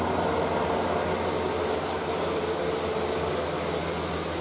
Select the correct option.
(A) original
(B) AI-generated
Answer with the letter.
A